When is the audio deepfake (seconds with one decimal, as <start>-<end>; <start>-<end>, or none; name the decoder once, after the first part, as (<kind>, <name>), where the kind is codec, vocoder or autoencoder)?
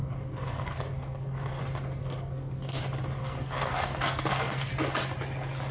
0.0-1.6 (codec, SNAC); 2.0-2.8; 3.2-4.7